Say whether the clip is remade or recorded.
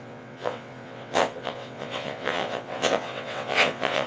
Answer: remade